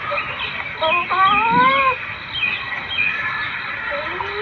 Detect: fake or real real